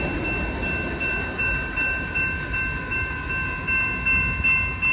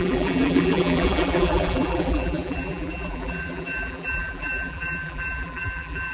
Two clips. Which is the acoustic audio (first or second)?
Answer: first